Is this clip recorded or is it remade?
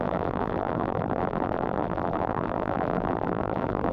remade